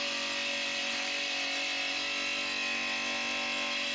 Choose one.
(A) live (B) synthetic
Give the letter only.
A